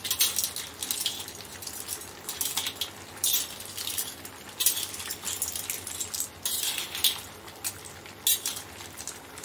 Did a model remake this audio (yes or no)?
no